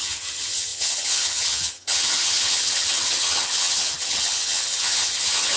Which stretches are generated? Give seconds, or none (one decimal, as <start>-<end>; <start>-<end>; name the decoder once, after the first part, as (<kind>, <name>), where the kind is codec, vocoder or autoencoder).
0.0-5.6 (vocoder, HiFi-GAN)